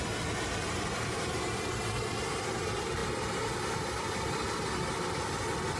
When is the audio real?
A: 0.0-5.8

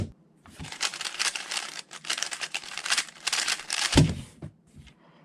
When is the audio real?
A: none

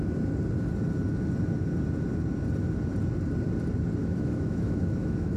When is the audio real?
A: 0.0-4.0